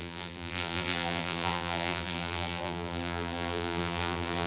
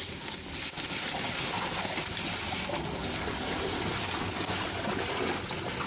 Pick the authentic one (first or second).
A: second